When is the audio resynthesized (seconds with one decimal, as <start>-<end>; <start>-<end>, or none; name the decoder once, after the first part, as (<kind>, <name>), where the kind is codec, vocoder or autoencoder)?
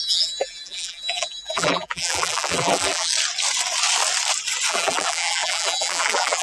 0.0-3.1 (vocoder, BigVGAN v2); 4.7-6.4